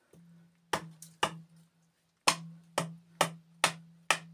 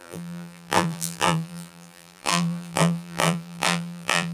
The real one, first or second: first